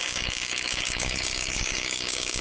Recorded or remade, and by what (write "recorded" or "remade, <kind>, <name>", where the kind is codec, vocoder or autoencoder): remade, codec, DAC